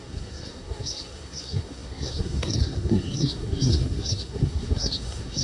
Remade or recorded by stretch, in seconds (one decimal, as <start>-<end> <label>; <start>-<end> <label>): 0.0-5.4 remade